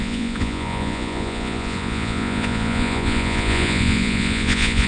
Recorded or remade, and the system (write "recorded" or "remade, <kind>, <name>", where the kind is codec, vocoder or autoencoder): remade, vocoder, Vocos